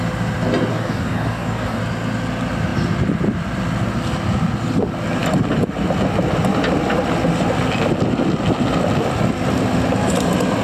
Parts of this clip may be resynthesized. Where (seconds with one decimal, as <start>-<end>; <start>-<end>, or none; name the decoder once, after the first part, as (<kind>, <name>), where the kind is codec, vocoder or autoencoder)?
0.7-1.8 (codec, DAC)